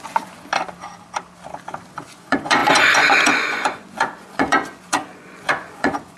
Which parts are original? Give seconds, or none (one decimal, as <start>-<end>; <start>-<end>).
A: 0.5-1.9